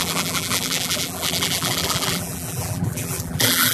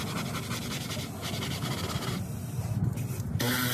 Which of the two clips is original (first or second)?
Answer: second